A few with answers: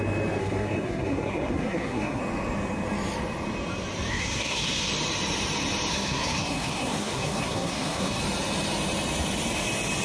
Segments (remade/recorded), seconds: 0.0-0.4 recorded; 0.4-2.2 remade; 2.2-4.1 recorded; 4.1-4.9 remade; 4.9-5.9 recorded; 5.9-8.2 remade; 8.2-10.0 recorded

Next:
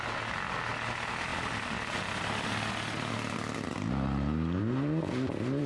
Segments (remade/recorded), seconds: 0.0-5.7 recorded

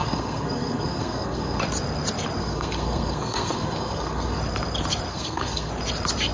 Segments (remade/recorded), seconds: 0.0-1.6 remade; 1.6-2.4 recorded; 2.4-4.4 remade; 4.4-5.1 recorded; 5.1-5.7 remade; 5.7-6.3 recorded

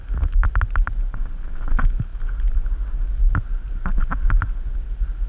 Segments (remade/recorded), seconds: 0.0-5.3 recorded

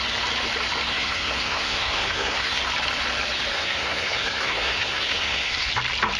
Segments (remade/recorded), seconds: 0.0-0.9 recorded; 0.9-2.6 remade; 2.6-3.5 recorded; 3.5-5.7 remade; 5.7-6.2 recorded

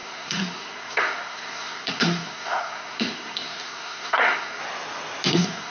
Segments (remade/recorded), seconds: 0.0-4.6 remade; 4.6-5.3 recorded; 5.3-5.7 remade